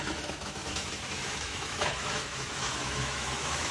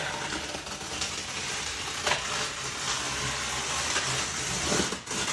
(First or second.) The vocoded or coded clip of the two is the first